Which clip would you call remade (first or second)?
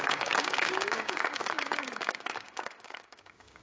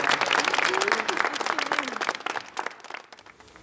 first